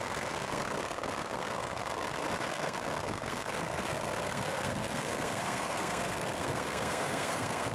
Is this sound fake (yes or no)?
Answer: yes